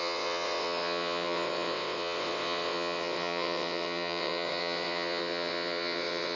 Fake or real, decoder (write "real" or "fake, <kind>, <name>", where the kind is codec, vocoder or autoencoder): fake, vocoder, WaveNeXt